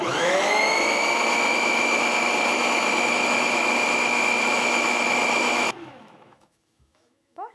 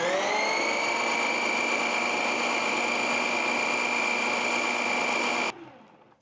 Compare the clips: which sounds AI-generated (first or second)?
first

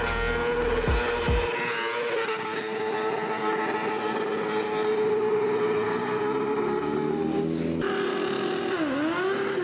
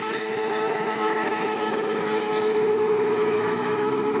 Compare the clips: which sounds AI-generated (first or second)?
second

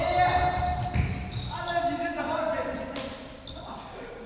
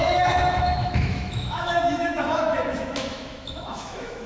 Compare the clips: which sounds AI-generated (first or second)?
second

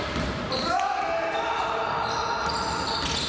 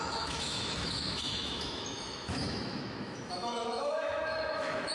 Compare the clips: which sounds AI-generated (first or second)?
second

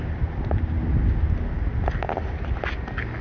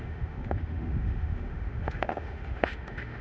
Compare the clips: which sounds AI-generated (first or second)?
second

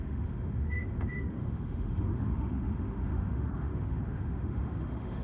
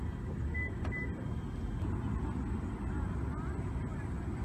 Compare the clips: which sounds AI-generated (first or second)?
first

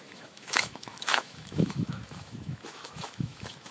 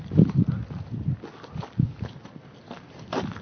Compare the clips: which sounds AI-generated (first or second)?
first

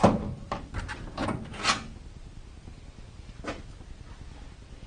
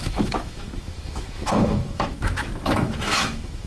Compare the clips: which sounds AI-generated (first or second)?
second